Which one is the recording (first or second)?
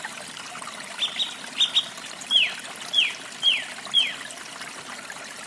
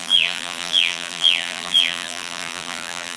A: first